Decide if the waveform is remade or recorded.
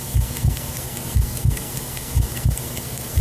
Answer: remade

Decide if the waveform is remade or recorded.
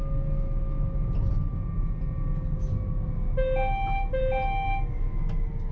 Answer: recorded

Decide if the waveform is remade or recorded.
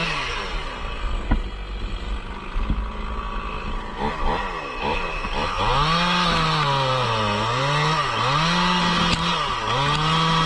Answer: recorded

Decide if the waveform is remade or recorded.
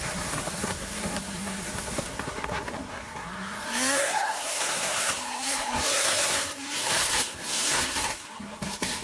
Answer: remade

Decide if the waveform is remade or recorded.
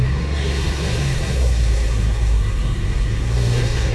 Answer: remade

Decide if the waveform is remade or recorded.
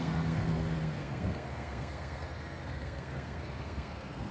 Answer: remade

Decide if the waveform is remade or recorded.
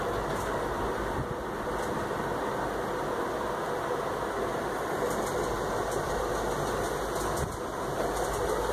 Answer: recorded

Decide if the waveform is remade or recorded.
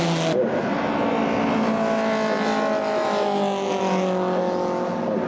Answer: recorded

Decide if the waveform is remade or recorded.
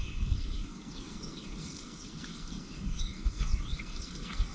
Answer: remade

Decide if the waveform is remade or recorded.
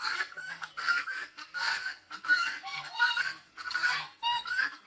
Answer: remade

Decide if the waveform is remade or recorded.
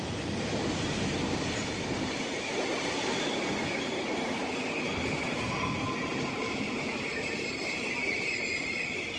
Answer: recorded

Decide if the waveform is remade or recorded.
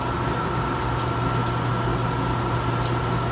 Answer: recorded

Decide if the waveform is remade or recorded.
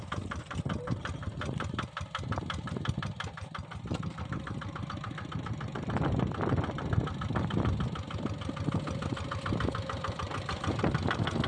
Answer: recorded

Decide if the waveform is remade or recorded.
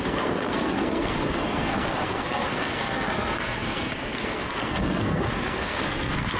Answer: remade